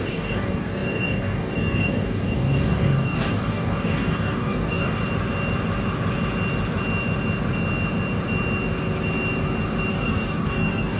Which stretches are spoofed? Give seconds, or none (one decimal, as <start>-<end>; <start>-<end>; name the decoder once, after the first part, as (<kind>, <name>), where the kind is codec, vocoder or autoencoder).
0.0-5.0 (codec, DAC); 9.9-11.0